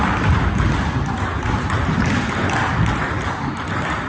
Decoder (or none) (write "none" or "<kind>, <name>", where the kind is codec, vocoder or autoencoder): none